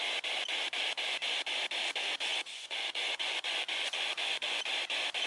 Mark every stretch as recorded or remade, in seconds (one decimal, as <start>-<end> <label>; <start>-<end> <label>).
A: 0.0-2.3 recorded; 2.3-4.6 remade; 4.6-5.3 recorded